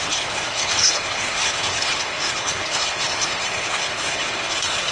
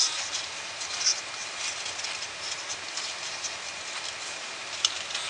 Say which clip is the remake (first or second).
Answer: first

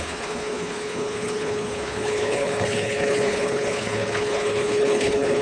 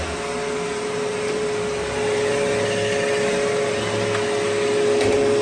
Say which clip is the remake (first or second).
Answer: first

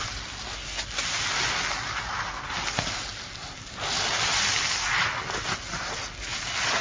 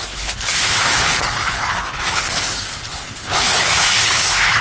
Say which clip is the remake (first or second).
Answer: second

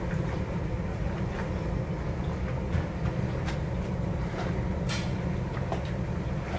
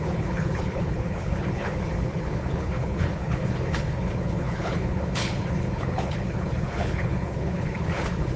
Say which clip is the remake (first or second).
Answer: second